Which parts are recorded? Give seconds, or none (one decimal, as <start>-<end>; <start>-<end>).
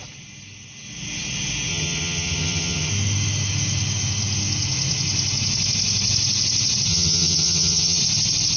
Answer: 0.0-1.7; 2.9-6.9; 8.0-8.6